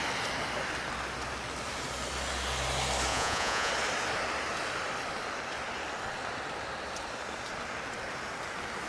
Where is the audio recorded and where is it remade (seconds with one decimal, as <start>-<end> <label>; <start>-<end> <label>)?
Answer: 0.0-3.1 recorded; 3.1-3.7 remade; 3.7-8.9 recorded